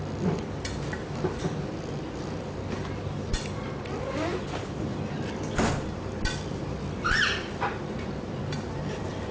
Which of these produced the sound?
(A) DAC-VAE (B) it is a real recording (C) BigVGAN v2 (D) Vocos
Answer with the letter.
C